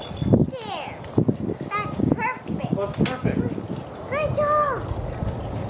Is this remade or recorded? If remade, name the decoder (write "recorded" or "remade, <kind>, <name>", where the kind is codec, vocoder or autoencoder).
recorded